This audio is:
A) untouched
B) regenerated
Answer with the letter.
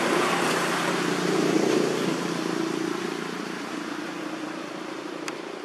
B